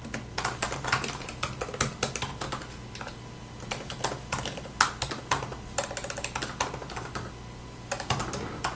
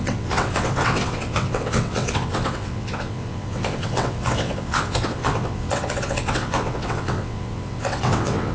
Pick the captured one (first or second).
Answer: first